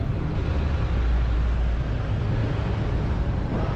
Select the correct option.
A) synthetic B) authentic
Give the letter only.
B